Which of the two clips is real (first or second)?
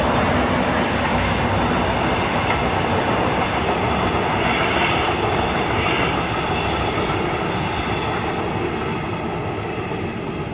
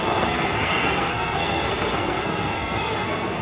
first